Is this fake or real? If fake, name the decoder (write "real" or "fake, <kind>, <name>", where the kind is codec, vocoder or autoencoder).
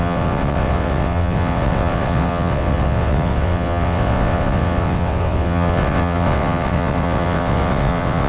fake, vocoder, WaveNeXt